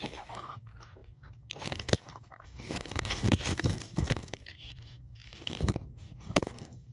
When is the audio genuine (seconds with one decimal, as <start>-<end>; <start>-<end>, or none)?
none